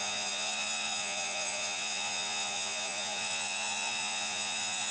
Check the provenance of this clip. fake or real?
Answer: fake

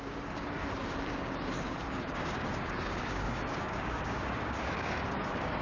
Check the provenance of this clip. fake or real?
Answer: fake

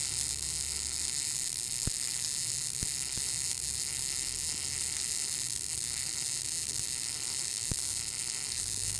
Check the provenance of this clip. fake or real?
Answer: real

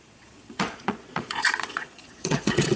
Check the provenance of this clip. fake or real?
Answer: fake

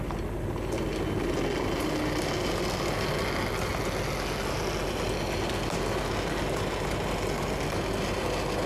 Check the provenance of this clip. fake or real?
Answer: real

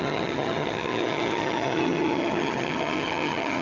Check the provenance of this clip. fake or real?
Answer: fake